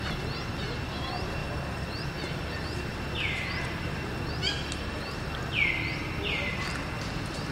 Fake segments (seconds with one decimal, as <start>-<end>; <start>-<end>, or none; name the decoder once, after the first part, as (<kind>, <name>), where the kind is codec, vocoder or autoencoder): 2.9-4.1 (vocoder, BigVGAN v2)